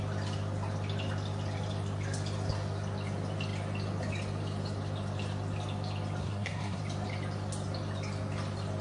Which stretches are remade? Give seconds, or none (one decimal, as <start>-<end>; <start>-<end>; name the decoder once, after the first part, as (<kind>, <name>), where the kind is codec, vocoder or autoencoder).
6.2-6.8 (codec, SNAC)